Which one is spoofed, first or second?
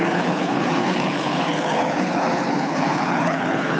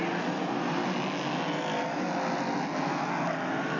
first